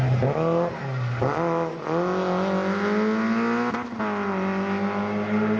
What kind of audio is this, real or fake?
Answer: real